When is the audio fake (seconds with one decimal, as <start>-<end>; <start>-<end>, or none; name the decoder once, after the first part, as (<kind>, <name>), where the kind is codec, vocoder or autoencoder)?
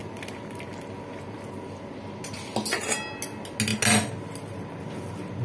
none